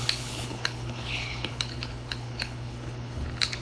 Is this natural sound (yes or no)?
no